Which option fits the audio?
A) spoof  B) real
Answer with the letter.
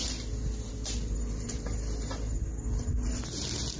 B